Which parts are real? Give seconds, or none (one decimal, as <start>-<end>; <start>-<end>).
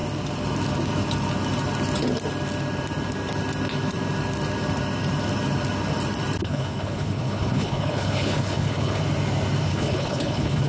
0.0-6.4; 9.0-9.7